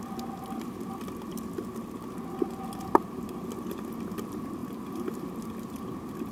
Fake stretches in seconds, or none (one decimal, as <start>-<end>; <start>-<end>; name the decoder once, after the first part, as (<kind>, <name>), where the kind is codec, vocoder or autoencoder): 4.6-5.2 (vocoder, BigVGAN v2)